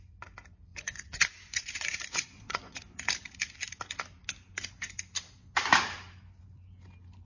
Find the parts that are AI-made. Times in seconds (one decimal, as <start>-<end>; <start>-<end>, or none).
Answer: 0.7-3.0